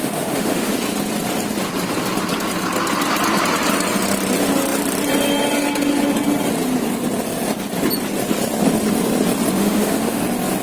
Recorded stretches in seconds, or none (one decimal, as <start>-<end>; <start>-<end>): 0.7-9.6; 10.2-10.6